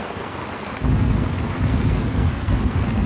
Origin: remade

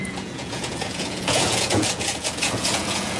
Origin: remade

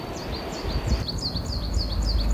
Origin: recorded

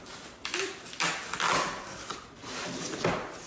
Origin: recorded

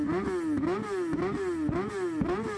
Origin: recorded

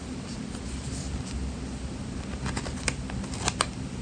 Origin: recorded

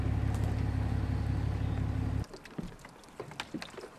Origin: recorded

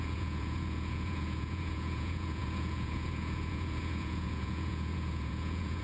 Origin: remade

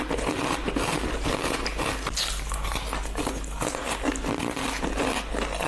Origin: recorded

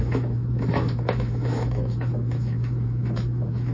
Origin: remade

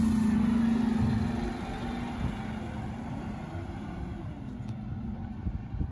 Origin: recorded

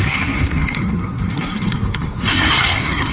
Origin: remade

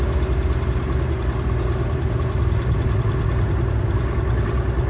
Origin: recorded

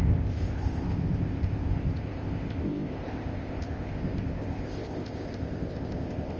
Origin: remade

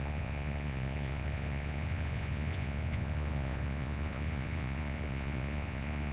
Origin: remade